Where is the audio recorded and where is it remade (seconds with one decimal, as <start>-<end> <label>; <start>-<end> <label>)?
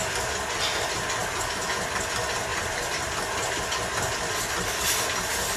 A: 0.0-1.2 recorded; 1.2-1.9 remade; 1.9-2.5 recorded; 2.5-4.3 remade; 4.3-5.6 recorded